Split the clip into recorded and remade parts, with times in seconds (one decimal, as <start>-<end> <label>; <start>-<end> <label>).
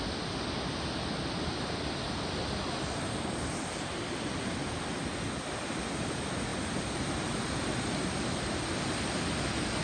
0.0-9.8 recorded